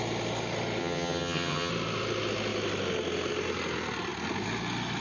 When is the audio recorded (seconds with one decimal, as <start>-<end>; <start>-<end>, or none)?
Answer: 0.0-0.8; 1.7-5.0